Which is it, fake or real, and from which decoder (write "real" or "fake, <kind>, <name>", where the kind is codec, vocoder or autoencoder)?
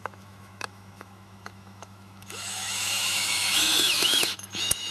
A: fake, autoencoder, DAC-VAE